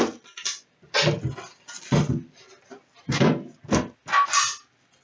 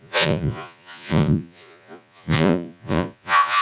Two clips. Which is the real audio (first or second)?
first